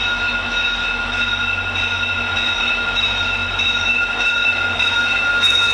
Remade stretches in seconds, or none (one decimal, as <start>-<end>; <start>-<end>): 0.0-1.3; 2.6-5.7